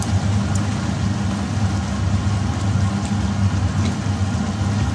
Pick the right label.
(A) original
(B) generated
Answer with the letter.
A